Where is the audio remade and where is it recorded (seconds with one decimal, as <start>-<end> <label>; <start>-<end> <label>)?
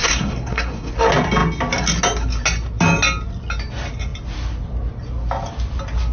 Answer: 0.0-0.9 remade; 0.9-6.1 recorded